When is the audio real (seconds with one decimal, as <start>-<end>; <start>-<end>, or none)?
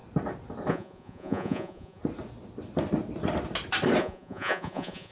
0.0-0.7; 2.0-4.0